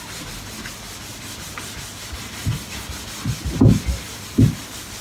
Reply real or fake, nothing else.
real